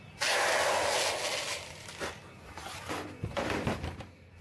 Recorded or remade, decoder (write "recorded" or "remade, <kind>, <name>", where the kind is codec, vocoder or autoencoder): recorded